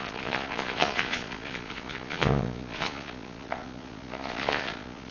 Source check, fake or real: fake